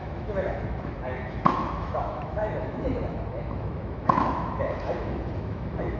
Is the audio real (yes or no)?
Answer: no